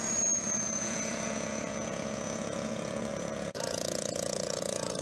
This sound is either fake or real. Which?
fake